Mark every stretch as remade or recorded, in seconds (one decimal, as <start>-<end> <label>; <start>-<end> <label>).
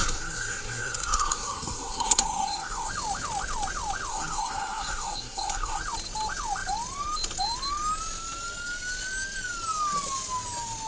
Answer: 0.0-2.9 remade; 2.9-4.1 recorded; 4.1-5.8 remade; 5.8-10.9 recorded